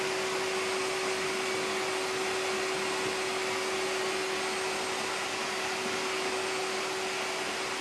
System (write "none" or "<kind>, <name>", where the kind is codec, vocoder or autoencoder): none